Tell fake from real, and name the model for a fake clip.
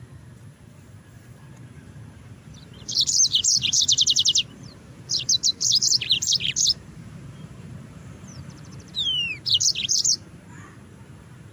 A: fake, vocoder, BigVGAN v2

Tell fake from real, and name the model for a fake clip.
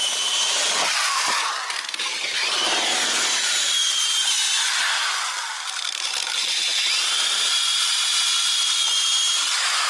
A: fake, vocoder, BigVGAN v2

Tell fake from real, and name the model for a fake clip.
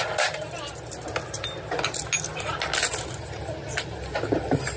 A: real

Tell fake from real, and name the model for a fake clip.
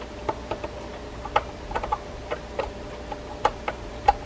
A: real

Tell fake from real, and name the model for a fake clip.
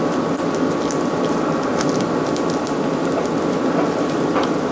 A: real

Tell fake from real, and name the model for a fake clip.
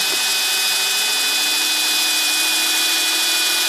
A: fake, vocoder, BigVGAN v2